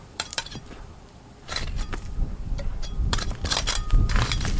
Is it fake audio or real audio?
fake